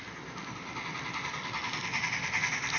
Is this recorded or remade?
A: recorded